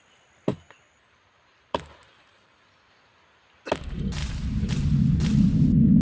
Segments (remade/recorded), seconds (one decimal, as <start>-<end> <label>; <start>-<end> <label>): 0.0-0.5 recorded; 0.5-2.9 remade; 2.9-4.2 recorded; 4.2-4.8 remade; 4.8-6.0 recorded